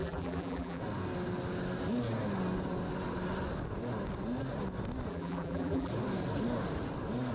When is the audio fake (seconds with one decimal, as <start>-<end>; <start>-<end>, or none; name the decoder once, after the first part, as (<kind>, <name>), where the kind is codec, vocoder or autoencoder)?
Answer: 0.0-0.8 (vocoder, BigVGAN v2); 5.1-5.9